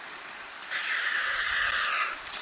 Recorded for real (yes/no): yes